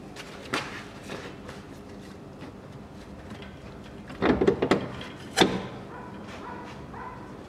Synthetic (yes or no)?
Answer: no